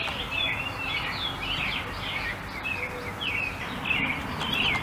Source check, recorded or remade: recorded